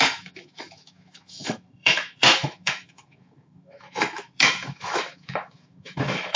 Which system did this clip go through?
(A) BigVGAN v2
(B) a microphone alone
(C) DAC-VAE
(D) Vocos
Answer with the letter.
C